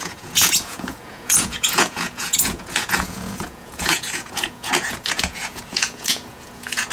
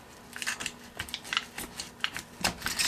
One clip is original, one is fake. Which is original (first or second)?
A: second